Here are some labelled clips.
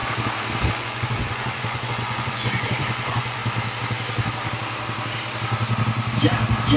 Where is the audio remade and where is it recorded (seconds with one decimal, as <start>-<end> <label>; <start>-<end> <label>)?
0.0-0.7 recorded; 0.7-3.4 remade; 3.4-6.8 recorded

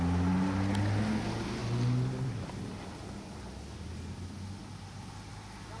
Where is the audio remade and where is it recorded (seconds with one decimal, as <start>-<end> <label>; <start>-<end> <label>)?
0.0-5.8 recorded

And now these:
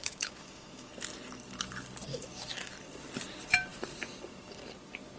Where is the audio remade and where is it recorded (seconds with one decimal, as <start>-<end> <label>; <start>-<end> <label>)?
0.0-0.9 remade; 0.9-2.1 recorded; 2.1-2.7 remade; 2.7-5.2 recorded

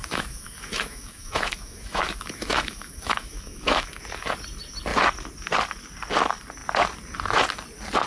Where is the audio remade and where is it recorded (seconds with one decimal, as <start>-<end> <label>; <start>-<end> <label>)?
0.0-4.0 remade; 4.0-8.1 recorded

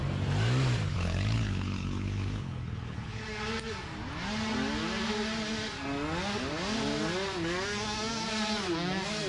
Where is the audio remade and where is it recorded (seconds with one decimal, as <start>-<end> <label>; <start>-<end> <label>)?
0.0-0.9 recorded; 0.9-3.2 remade; 3.2-9.3 recorded

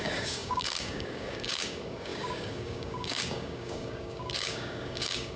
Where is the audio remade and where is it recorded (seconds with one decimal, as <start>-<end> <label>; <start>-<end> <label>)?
0.0-5.4 remade